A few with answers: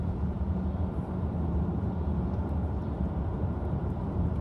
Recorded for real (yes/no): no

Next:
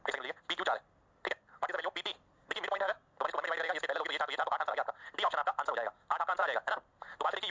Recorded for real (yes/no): yes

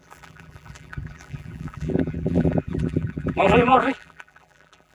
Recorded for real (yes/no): no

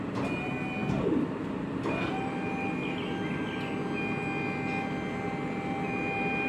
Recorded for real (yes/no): yes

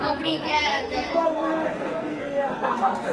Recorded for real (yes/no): no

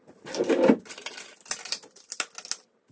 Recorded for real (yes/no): yes